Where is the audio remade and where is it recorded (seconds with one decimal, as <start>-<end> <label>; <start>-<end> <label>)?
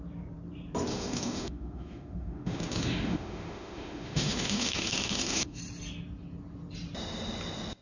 0.0-0.9 recorded; 0.9-5.6 remade; 5.6-7.8 recorded